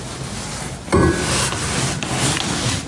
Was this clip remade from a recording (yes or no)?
no